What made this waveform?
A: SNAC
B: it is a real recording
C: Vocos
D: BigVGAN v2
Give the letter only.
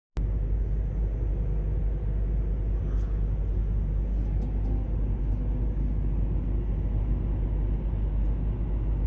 B